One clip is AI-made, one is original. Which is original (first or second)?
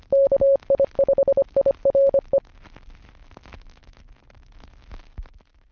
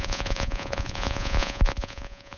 first